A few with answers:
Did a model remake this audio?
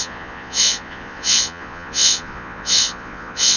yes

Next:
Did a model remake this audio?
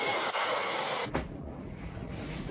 yes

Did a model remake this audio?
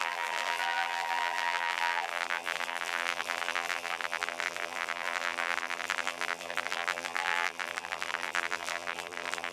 yes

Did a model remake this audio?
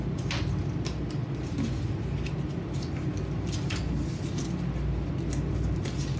no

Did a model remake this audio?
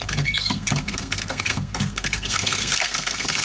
yes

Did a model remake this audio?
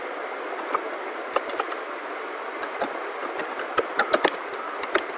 no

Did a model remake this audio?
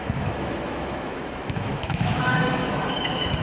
yes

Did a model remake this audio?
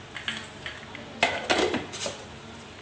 no